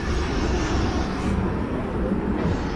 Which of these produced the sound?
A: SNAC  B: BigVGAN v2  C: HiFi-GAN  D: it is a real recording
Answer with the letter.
D